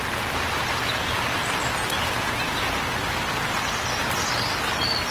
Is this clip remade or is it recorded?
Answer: recorded